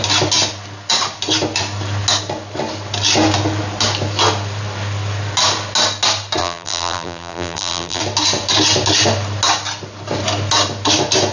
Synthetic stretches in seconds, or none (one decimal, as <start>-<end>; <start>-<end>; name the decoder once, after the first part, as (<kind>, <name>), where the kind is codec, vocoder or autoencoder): 6.4-8.0 (vocoder, BigVGAN v2)